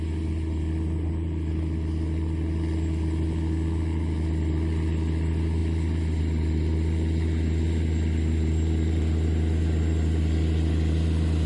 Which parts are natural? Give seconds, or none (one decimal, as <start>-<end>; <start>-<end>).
0.0-11.5